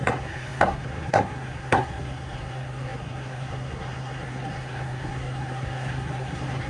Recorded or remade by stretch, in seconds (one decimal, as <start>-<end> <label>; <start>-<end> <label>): 0.0-6.7 remade